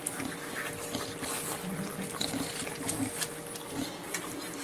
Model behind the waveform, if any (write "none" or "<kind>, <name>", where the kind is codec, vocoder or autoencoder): none